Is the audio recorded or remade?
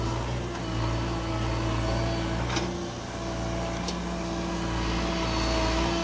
recorded